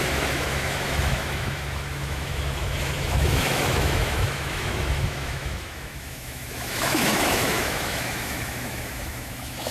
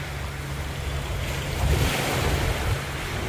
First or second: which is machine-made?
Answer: first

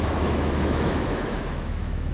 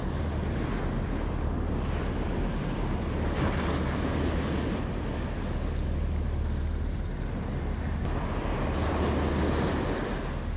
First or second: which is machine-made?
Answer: first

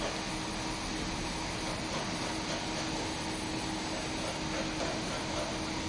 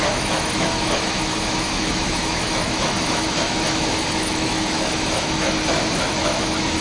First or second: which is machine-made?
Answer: second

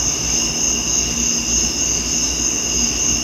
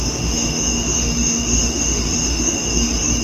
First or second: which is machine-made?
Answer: second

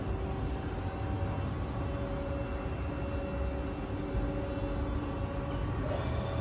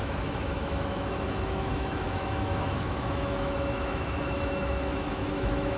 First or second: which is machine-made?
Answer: second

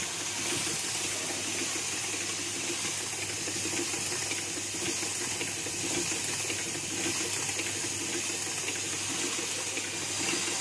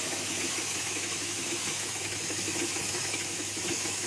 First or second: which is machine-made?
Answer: second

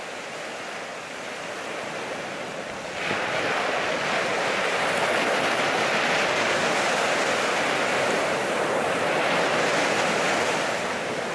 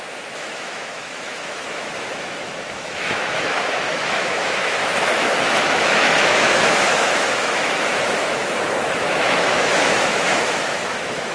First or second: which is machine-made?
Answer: second